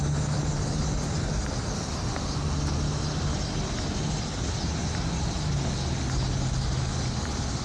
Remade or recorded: recorded